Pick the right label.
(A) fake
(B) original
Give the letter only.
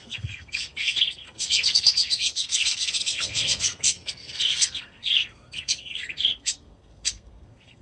A